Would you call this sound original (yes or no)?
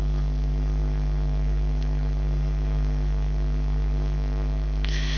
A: no